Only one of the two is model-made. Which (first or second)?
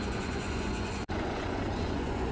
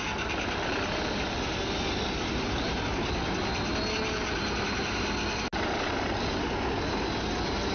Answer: first